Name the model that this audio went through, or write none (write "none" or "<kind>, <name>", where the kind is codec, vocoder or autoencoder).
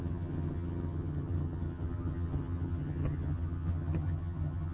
vocoder, HiFi-GAN